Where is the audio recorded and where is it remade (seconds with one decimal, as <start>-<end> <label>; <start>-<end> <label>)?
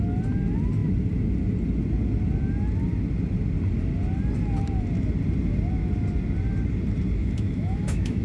0.0-7.2 recorded; 7.2-8.2 remade